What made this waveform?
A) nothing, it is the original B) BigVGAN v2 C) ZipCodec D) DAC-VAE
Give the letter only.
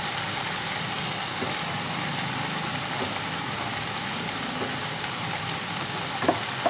B